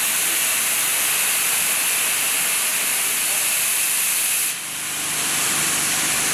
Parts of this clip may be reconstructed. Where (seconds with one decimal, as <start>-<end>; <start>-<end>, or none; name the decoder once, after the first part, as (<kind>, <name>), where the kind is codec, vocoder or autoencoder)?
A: 0.9-1.6 (vocoder, BigVGAN v2); 2.7-5.6